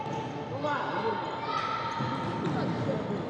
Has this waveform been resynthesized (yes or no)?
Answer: no